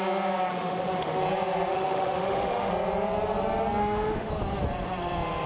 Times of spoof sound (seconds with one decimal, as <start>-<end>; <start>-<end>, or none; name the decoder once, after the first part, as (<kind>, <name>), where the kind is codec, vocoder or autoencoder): 0.5-1.2 (autoencoder, DAC-VAE); 1.7-2.7; 3.8-4.3

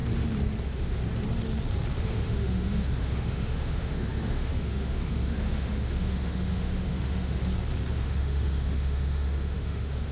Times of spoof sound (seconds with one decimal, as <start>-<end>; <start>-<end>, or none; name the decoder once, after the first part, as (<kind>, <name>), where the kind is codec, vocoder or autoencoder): 0.6-1.0 (autoencoder, DAC-VAE); 2.0-7.4; 7.9-10.1

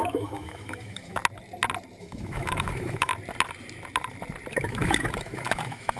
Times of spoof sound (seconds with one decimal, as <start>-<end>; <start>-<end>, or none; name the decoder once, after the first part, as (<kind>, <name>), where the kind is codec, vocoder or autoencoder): 0.0-1.2 (autoencoder, DAC-VAE); 2.0-3.1; 4.5-6.0

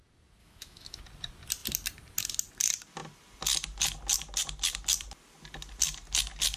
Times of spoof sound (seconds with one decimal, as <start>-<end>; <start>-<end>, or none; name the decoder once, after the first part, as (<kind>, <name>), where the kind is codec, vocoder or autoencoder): 0.4-1.0 (autoencoder, DAC-VAE)

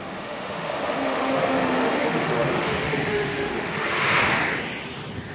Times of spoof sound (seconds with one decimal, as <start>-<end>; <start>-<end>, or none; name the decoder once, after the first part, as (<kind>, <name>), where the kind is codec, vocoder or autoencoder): 0.0-4.4 (autoencoder, DAC-VAE)